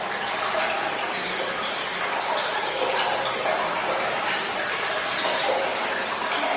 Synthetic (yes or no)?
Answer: no